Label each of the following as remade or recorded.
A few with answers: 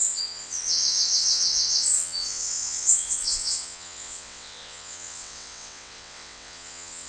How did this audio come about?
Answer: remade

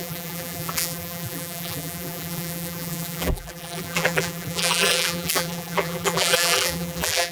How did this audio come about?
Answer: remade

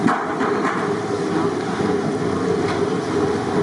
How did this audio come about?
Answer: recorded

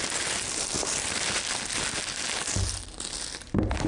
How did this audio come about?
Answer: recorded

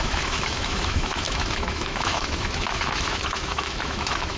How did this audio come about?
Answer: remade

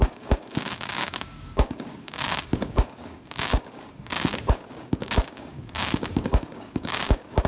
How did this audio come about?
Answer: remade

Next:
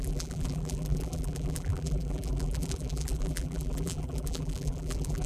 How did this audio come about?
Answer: remade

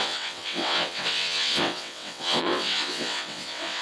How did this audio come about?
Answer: remade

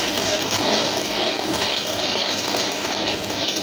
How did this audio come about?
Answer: remade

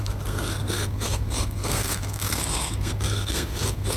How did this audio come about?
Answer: remade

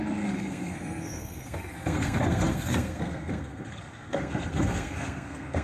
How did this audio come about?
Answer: remade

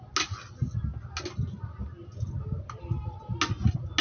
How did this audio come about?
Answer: recorded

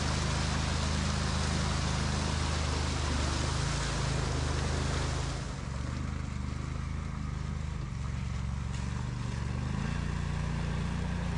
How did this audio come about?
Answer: recorded